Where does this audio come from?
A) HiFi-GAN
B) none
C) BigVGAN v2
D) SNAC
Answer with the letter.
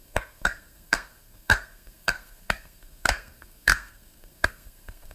D